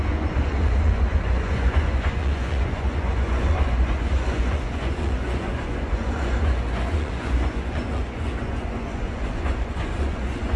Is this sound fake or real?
fake